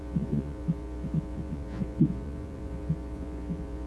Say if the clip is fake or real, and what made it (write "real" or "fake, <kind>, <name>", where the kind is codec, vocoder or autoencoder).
fake, vocoder, Vocos